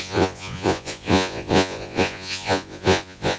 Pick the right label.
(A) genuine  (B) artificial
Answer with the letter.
B